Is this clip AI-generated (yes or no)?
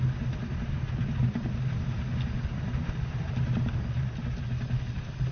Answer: no